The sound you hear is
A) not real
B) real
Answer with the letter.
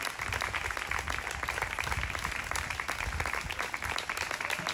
B